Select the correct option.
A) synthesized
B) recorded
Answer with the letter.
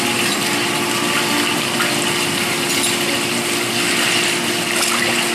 B